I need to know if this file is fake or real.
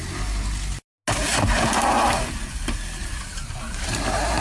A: real